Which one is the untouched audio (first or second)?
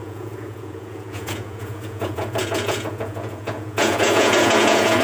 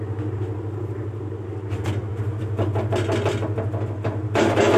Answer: second